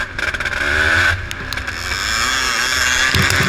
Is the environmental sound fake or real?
real